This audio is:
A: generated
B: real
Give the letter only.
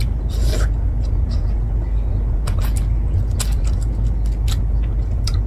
B